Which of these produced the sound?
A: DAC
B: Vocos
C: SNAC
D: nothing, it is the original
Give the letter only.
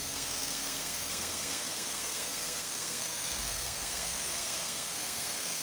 C